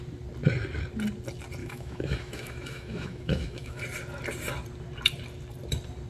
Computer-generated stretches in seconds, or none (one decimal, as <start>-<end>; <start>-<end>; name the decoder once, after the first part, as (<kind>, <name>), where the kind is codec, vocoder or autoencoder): 1.6-3.8 (autoencoder, DAC-VAE)